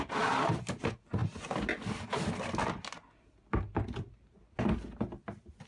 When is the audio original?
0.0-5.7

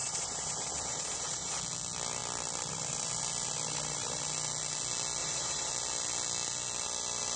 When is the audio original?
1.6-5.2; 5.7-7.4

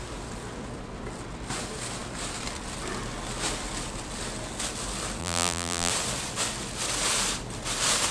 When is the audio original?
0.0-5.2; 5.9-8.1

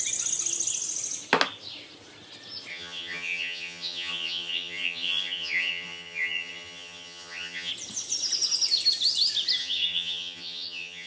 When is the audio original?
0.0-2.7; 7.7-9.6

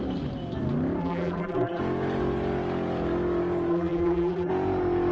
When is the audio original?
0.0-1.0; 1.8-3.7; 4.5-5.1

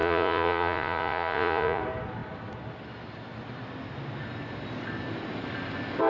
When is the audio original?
1.8-6.1